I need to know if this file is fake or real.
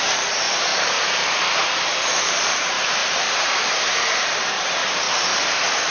fake